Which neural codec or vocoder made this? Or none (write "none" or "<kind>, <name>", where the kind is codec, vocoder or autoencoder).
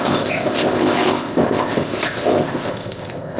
codec, ZipCodec